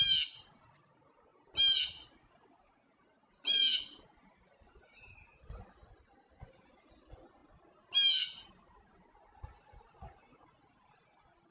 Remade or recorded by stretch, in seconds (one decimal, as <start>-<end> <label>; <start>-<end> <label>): 0.0-11.5 recorded